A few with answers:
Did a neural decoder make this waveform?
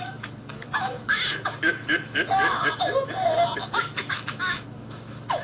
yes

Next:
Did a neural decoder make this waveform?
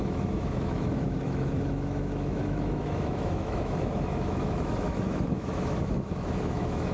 yes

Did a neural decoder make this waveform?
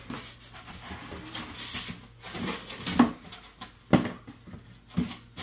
no